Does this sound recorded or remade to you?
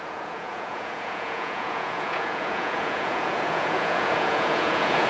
remade